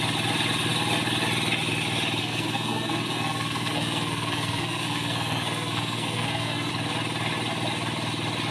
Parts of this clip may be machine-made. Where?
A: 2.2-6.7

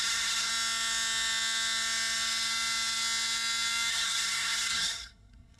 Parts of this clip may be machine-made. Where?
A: 0.0-0.5; 3.9-5.6